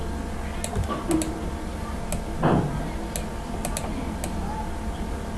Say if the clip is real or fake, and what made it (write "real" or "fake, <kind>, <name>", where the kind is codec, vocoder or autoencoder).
real